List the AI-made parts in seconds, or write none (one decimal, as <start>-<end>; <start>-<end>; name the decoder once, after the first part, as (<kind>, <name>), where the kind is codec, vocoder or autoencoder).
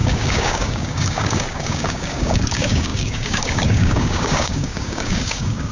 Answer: 0.0-5.7 (codec, DAC)